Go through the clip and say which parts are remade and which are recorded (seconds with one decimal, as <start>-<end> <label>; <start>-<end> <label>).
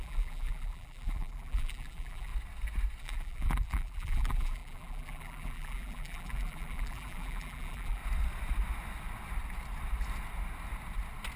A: 0.0-2.3 remade; 2.3-3.0 recorded; 3.0-8.0 remade; 8.0-11.4 recorded